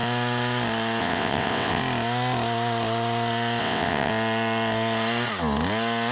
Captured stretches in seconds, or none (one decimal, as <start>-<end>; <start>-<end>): 0.0-1.0; 1.8-3.6; 4.1-6.1